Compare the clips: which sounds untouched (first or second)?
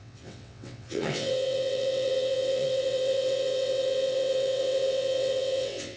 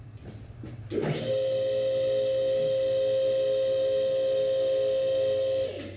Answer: second